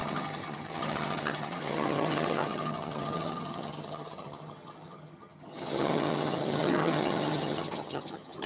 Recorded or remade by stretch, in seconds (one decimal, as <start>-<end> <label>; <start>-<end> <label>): 0.0-8.5 remade